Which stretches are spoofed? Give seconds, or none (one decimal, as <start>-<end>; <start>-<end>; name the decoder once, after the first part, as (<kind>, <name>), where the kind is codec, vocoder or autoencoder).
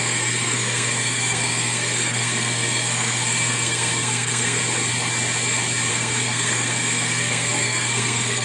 0.0-4.6 (codec, SNAC); 5.9-8.4